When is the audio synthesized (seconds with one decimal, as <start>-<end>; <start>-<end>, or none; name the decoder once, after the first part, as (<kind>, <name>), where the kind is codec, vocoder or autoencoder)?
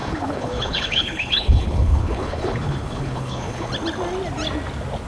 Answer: 0.0-3.7 (codec, HILCodec)